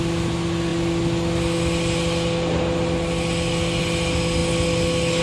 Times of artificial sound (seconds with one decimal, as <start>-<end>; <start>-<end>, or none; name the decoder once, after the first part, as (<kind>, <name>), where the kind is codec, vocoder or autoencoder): none